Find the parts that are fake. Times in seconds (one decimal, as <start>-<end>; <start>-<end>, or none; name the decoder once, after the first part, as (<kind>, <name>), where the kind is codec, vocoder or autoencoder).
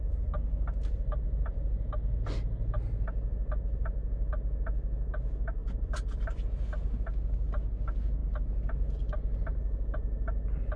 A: 5.6-6.4 (vocoder, BigVGAN v2)